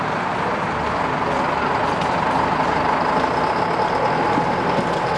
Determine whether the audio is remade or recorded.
recorded